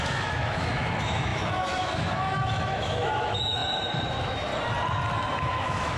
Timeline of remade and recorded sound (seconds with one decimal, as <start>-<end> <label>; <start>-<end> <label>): 0.0-4.5 remade; 4.5-5.5 recorded; 5.5-6.0 remade